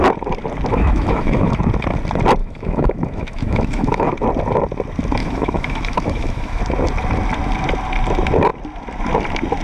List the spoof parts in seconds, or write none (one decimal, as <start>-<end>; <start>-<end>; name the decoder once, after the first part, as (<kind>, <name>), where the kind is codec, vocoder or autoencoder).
0.7-1.6 (autoencoder, DAC-VAE); 2.4-4.1; 5.2-6.6